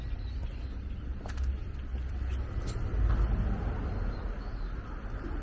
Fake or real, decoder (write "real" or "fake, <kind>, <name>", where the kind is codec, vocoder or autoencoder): real